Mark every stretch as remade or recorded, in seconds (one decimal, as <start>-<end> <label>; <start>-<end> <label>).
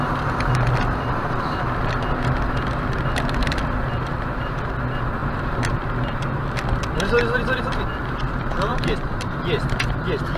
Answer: 0.0-8.7 recorded; 8.7-9.4 remade; 9.4-10.4 recorded